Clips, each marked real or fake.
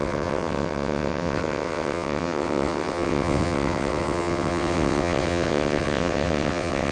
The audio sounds fake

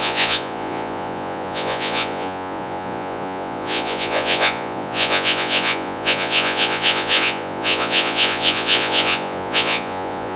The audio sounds fake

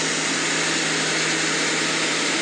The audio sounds real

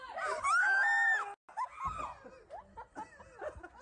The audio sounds real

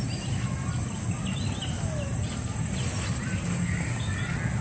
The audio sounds real